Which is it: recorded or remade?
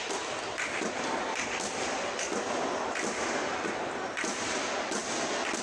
remade